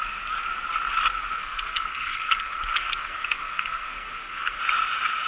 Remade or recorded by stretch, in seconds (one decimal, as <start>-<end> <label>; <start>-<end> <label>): 0.0-1.4 recorded; 1.4-4.6 remade; 4.6-5.3 recorded